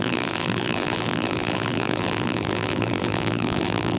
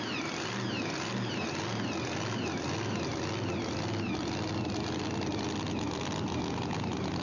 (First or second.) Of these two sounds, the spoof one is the first